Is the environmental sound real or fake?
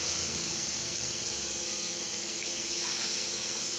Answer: fake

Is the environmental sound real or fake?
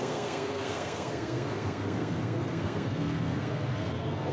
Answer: fake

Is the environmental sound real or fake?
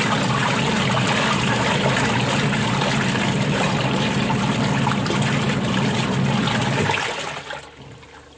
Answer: real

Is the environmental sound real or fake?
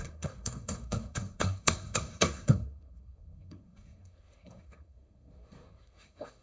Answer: fake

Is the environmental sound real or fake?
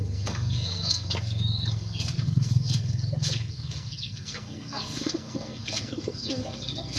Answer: fake